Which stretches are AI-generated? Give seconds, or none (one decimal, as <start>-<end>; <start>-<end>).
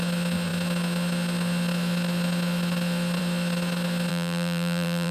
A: 4.1-5.1